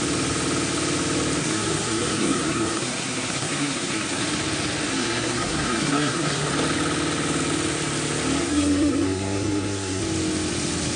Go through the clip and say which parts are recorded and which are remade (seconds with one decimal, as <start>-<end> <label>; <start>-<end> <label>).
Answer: 0.0-1.4 recorded; 1.4-4.2 remade; 4.2-4.9 recorded; 4.9-6.5 remade; 6.5-8.4 recorded; 8.4-10.0 remade; 10.0-11.0 recorded